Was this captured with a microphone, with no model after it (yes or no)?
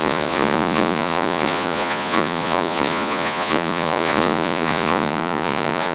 no